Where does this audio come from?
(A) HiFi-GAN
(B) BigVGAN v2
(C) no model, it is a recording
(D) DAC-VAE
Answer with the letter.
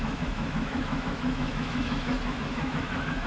D